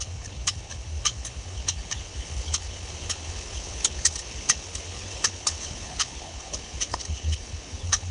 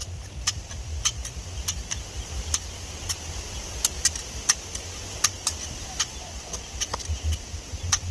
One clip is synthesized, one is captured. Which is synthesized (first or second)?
first